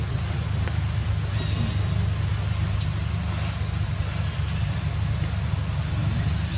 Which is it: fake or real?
real